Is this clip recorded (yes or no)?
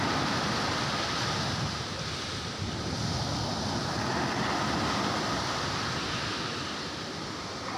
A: yes